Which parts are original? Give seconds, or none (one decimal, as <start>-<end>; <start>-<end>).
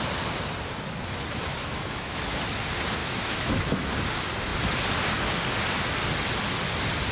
0.0-1.5; 2.2-3.0; 3.9-7.1